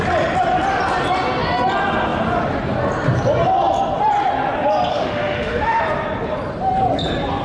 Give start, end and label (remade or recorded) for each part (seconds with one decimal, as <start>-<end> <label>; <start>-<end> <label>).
0.0-4.9 recorded; 4.9-5.8 remade; 5.8-7.4 recorded